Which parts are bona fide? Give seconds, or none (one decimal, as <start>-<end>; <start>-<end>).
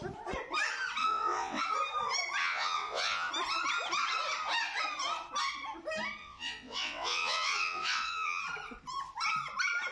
0.0-1.0; 1.6-2.4; 3.3-6.2; 8.4-9.9